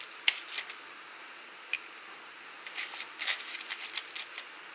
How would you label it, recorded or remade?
recorded